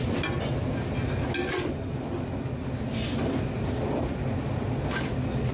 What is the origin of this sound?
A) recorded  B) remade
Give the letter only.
A